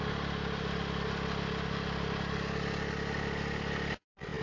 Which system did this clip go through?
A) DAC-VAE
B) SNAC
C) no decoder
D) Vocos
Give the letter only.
C